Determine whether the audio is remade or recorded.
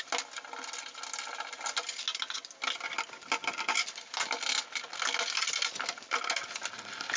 recorded